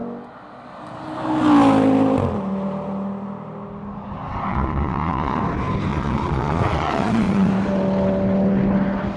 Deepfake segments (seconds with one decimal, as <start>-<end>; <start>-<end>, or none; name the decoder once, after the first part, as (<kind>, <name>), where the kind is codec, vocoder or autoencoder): 4.5-5.4 (vocoder, Vocos); 5.9-7.5